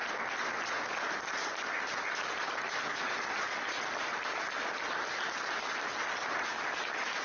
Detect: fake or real real